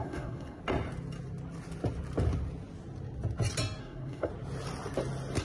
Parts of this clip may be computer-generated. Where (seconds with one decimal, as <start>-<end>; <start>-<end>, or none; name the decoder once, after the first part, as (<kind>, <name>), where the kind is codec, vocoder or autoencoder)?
0.0-0.6 (codec, SNAC); 3.8-4.3